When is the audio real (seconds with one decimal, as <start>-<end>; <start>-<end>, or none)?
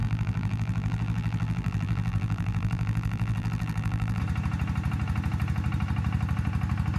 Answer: 4.2-7.0